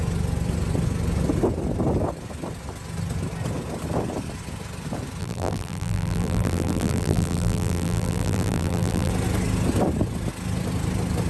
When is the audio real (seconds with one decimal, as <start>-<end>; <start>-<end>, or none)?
0.0-5.2; 9.1-11.3